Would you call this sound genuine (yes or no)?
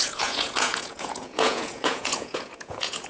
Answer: no